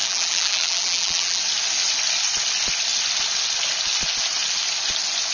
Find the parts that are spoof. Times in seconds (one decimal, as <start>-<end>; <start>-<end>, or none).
0.0-1.4